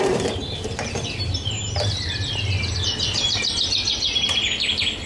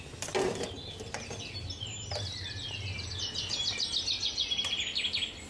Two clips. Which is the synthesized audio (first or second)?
first